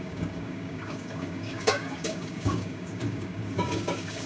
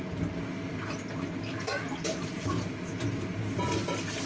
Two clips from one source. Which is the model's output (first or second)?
first